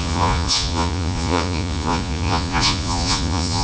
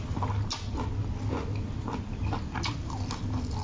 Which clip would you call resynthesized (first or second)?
first